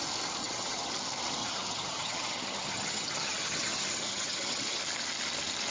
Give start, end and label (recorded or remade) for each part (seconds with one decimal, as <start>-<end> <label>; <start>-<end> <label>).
0.0-0.4 recorded; 0.4-0.9 remade; 0.9-1.4 recorded; 1.4-4.8 remade; 4.8-5.7 recorded